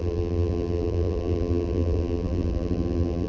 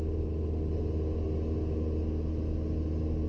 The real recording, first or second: second